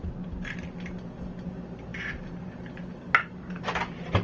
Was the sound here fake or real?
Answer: real